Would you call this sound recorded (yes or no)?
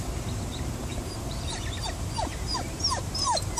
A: no